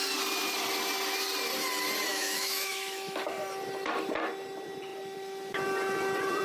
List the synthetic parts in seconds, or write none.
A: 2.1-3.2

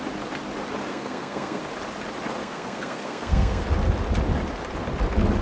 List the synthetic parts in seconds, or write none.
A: 0.9-1.6; 2.4-3.6

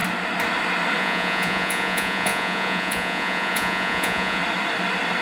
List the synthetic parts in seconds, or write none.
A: 1.0-4.4

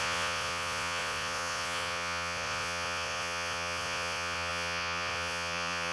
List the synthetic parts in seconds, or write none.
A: 0.0-5.9

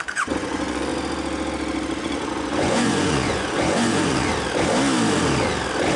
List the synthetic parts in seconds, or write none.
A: 0.0-0.9; 2.0-4.3

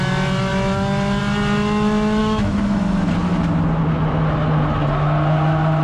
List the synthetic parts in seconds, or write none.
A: 2.2-3.1

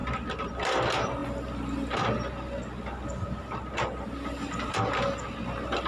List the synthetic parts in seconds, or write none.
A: none